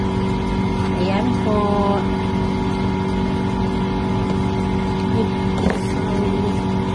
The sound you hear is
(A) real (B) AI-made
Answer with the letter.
A